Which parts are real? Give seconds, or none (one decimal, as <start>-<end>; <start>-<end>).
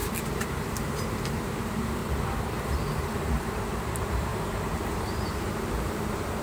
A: 0.0-0.8; 2.0-2.9